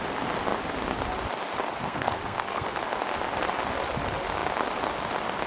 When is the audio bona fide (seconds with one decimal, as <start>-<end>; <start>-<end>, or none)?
0.0-1.7; 2.8-5.5